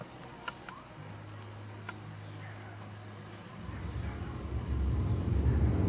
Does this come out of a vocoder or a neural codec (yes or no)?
no